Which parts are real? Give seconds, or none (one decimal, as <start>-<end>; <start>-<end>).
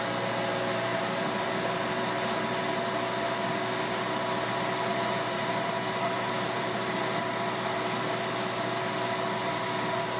0.0-0.9; 1.9-4.9; 7.2-10.2